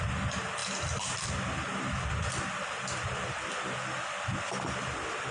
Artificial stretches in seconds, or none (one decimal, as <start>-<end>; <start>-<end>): 0.0-0.6; 1.3-5.3